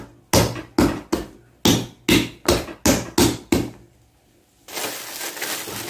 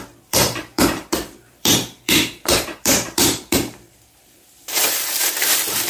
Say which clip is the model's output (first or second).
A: second